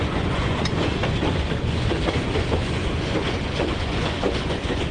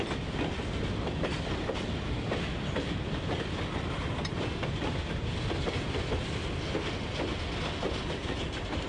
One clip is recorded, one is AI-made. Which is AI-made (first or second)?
first